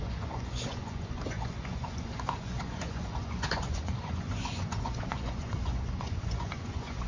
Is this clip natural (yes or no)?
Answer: no